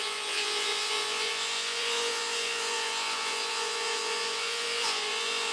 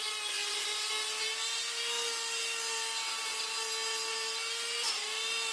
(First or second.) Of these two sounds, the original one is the second